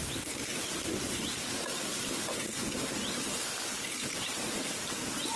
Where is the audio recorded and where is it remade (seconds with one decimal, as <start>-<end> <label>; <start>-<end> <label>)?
0.0-5.4 remade